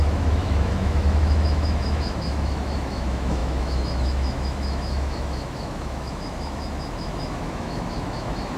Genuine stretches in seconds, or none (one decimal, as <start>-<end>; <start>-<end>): none